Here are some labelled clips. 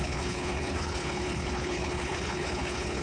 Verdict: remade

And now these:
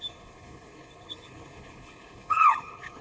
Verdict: remade